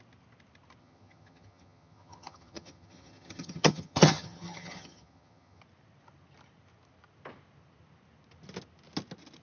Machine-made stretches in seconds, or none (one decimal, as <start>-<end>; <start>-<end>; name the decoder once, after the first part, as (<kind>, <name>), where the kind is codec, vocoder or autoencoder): 0.8-5.6 (vocoder, HiFi-GAN)